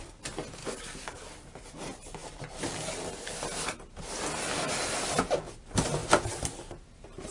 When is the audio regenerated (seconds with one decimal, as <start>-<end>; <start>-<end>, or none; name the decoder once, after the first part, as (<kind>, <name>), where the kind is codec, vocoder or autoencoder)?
0.6-1.3 (codec, DAC)